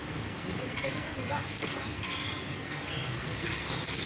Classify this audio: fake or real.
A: fake